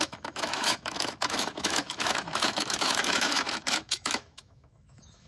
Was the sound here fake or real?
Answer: fake